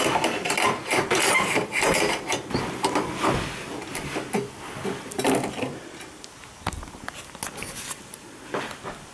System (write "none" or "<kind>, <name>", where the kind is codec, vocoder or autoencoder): none